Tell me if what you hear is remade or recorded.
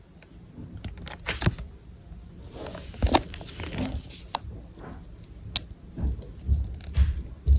recorded